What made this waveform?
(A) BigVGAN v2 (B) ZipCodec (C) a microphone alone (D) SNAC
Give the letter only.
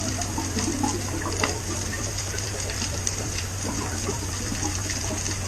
A